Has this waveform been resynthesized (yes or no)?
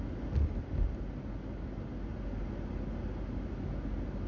no